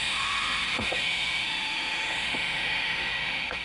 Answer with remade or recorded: remade